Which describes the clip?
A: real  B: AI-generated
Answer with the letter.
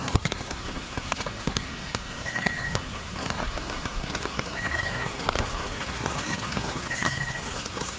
B